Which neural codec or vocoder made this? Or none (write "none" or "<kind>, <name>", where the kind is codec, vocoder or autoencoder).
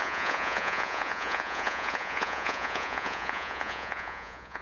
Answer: vocoder, Vocos